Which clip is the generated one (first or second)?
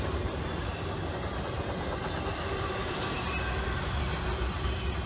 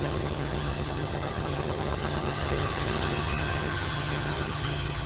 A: second